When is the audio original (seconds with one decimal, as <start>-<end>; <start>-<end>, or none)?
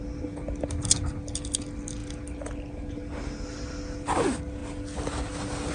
0.0-5.7